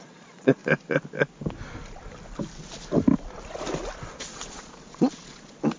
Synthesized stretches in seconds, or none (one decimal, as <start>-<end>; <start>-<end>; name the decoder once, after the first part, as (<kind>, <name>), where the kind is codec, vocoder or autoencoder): 0.0-0.6 (vocoder, Vocos); 4.1-5.8